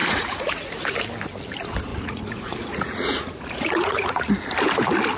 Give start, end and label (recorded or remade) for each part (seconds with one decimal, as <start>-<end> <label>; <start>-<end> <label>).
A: 0.0-0.8 remade; 0.8-1.9 recorded; 1.9-4.3 remade; 4.3-5.2 recorded